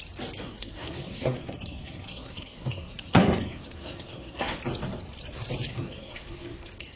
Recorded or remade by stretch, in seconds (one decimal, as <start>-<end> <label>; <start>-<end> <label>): 0.0-0.4 recorded; 0.4-4.6 remade; 4.6-5.7 recorded; 5.7-7.0 remade